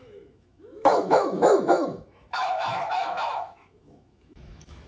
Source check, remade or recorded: remade